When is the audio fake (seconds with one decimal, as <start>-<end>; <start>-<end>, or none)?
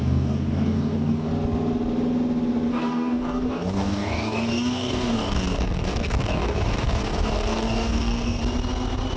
0.0-1.3; 2.7-8.4